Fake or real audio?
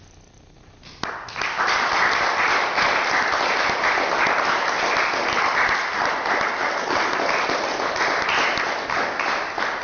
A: real